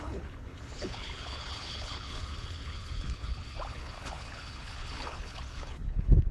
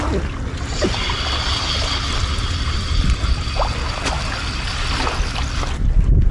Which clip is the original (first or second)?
second